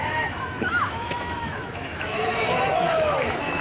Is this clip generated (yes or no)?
yes